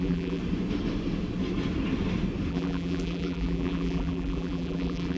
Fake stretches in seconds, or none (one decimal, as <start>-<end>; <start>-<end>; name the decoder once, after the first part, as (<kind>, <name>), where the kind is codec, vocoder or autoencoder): 0.0-0.4 (vocoder, BigVGAN v2); 2.5-5.2